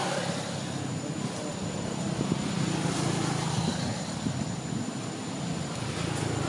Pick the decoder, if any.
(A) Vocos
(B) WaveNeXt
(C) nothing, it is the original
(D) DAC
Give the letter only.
C